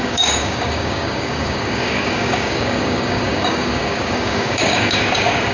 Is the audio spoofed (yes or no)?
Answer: yes